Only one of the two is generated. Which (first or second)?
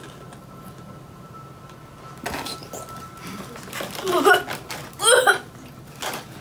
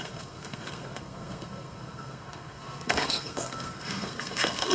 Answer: second